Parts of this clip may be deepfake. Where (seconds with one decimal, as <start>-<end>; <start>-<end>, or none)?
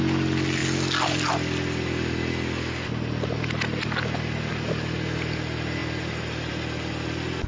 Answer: none